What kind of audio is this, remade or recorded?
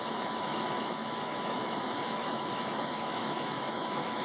remade